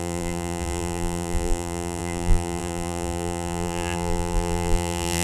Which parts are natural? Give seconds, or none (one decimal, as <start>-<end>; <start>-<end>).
none